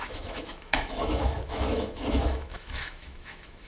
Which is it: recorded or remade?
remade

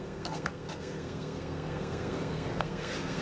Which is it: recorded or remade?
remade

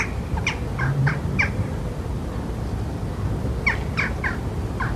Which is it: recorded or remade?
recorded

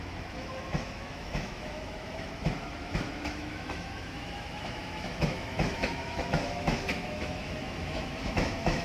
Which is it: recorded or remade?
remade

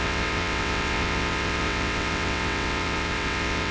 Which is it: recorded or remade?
remade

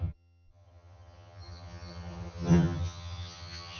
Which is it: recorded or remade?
remade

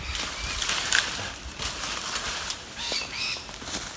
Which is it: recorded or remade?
recorded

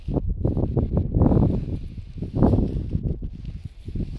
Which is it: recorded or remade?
recorded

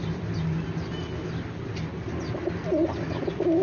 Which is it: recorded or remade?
recorded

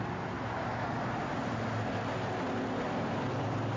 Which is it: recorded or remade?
recorded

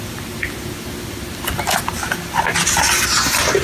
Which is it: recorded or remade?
recorded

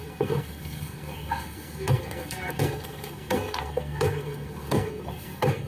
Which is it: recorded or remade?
remade